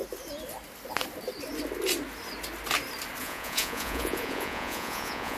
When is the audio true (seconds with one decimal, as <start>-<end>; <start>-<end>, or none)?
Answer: 0.0-3.2